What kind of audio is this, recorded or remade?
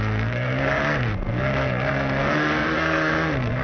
remade